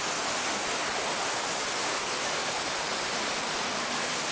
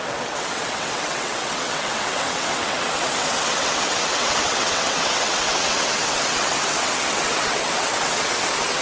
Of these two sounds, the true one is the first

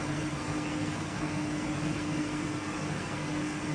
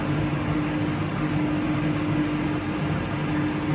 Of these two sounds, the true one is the second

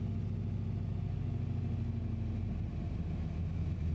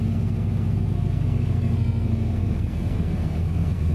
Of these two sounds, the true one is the first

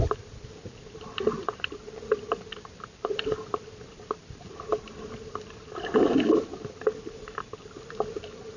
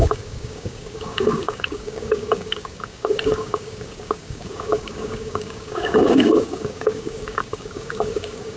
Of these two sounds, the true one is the first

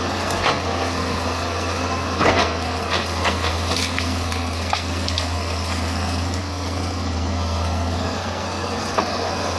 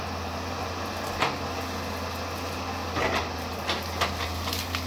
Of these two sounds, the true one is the second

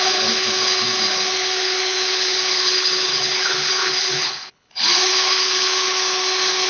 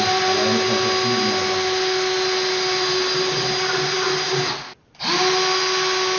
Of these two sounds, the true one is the second